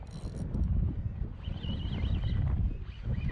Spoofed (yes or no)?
no